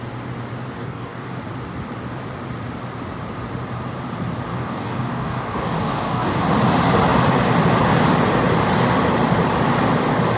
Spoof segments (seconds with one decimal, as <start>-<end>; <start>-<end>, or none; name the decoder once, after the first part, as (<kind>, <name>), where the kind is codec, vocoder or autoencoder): 0.8-1.4 (codec, DAC); 4.5-6.4

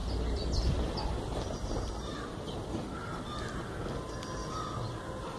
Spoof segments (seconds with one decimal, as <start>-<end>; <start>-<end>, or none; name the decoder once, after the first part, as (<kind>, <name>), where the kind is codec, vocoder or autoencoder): 0.0-3.2 (vocoder, BigVGAN v2)

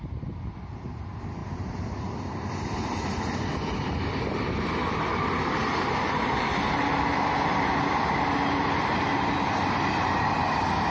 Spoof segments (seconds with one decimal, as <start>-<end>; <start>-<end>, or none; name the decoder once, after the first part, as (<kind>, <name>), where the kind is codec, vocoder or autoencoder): none

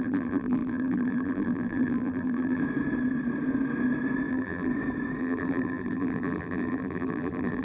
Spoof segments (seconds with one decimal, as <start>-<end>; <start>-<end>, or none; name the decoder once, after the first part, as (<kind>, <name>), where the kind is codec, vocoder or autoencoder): 0.0-2.6 (vocoder, BigVGAN v2); 4.3-4.7; 5.2-7.6

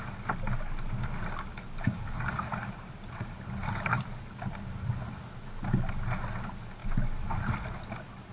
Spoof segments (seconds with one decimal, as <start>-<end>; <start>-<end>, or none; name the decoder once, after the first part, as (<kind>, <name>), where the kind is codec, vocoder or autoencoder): 1.5-4.2 (vocoder, BigVGAN v2)